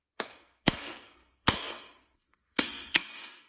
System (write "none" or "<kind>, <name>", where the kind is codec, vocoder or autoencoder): codec, SNAC